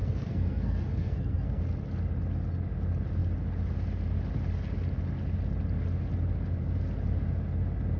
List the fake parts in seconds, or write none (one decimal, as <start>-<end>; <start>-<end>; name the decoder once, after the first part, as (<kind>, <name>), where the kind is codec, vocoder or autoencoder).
0.0-1.6 (codec, SNAC)